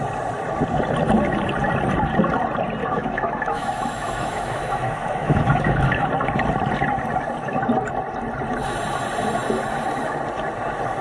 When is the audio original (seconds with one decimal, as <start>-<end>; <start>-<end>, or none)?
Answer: 0.0-2.8; 6.1-11.0

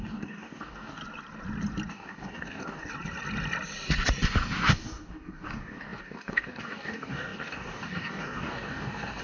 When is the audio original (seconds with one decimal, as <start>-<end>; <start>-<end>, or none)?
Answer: 1.0-1.9; 2.9-4.7

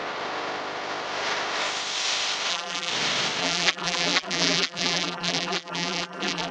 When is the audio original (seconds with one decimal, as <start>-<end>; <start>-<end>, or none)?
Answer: 0.0-2.5; 2.9-3.4

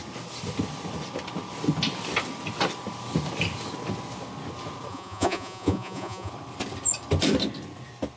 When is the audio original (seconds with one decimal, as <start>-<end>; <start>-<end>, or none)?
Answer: 0.0-4.9; 6.3-8.2

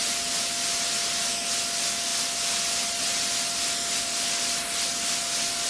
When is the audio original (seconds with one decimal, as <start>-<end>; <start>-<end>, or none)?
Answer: 0.0-5.7

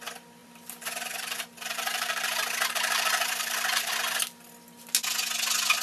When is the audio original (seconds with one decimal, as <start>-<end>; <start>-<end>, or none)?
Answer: 0.0-0.4; 3.9-5.8

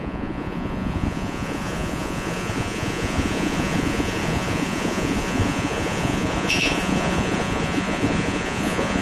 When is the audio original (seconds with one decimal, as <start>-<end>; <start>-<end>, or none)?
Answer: none

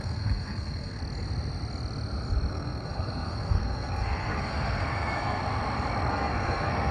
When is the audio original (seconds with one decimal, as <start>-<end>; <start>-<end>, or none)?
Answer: 1.0-2.5; 5.4-6.1